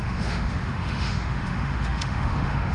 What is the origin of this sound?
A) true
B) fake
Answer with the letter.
B